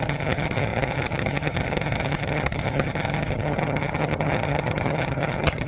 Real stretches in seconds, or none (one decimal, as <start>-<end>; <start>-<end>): none